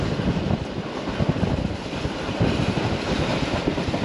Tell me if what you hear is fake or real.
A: real